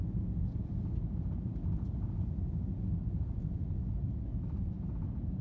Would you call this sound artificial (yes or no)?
no